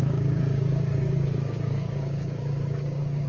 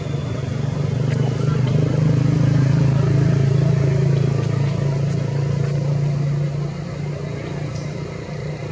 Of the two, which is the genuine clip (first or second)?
second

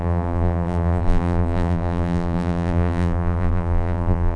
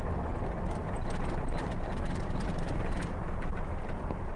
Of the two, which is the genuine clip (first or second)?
second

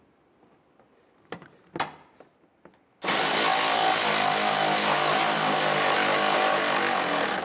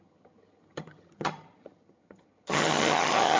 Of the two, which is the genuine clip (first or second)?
first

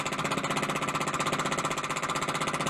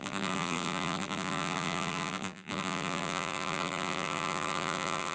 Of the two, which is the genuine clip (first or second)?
first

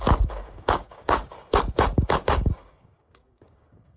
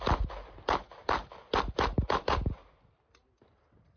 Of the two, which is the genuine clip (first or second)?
second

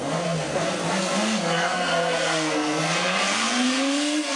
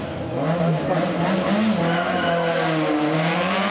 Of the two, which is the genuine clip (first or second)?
second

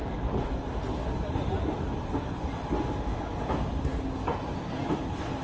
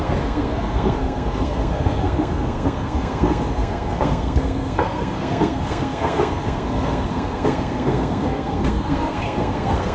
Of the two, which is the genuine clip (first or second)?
first